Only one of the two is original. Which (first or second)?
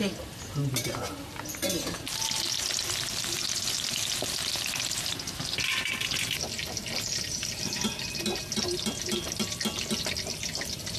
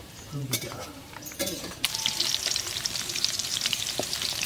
first